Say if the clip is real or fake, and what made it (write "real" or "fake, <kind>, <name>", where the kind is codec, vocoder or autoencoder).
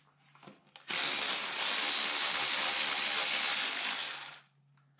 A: real